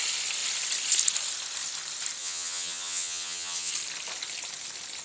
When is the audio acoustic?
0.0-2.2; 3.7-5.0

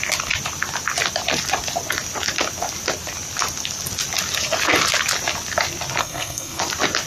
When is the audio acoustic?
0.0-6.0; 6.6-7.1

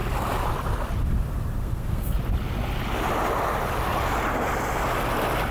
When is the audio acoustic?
0.0-1.6; 2.1-5.5

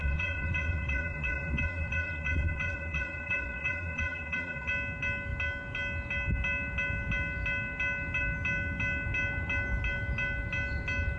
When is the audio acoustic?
4.7-11.2